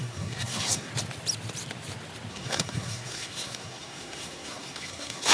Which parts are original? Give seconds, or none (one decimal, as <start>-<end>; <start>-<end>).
0.9-2.3